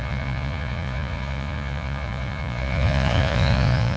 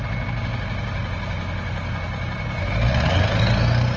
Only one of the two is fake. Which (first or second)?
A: first